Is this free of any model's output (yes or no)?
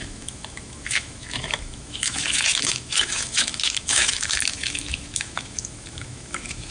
no